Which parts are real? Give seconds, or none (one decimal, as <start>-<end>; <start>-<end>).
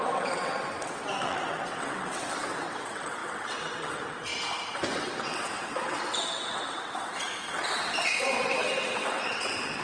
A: 4.3-4.9